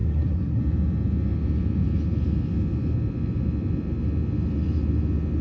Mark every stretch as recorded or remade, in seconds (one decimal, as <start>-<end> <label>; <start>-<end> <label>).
0.0-0.6 remade; 0.6-5.4 recorded